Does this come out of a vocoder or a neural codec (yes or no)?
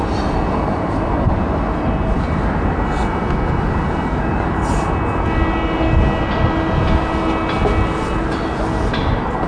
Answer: no